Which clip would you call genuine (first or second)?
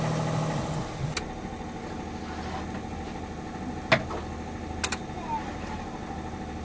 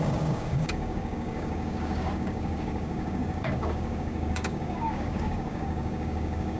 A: first